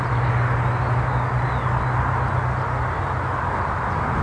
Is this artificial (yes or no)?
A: no